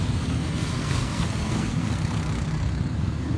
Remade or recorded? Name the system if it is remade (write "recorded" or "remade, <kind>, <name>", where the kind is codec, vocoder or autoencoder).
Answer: remade, codec, SNAC